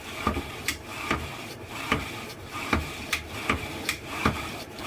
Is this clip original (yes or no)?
no